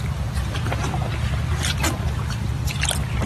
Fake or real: real